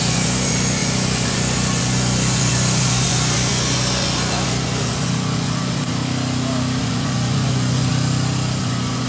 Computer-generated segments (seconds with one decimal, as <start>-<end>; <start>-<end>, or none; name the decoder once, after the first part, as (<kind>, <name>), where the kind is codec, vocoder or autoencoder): 0.0-6.0 (vocoder, Vocos); 6.8-7.9; 8.6-9.1